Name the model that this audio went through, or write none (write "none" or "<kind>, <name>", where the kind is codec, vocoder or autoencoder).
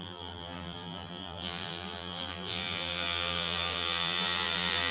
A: vocoder, BigVGAN v2